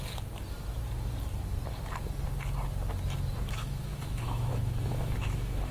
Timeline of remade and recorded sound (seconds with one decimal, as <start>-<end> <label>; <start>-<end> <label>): 0.0-3.4 recorded; 3.4-5.7 remade